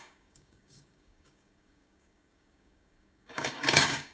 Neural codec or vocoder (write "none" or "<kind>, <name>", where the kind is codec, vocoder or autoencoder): codec, DAC